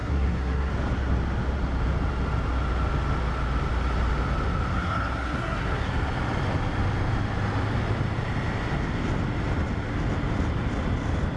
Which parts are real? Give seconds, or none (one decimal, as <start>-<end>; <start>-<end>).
0.7-4.7; 5.9-11.4